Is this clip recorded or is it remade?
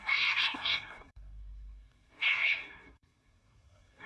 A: remade